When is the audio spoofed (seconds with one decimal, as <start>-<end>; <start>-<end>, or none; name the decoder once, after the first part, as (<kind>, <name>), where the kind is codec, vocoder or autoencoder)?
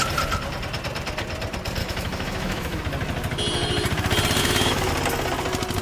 1.8-2.8 (autoencoder, DAC-VAE); 4.4-4.9